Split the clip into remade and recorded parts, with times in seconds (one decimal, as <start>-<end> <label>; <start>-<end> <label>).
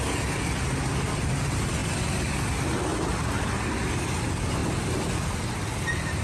0.0-6.2 recorded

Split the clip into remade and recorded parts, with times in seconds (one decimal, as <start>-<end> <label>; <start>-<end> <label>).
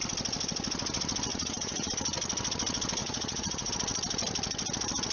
0.0-1.3 recorded; 1.3-1.9 remade; 1.9-3.0 recorded; 3.0-3.7 remade; 3.7-5.1 recorded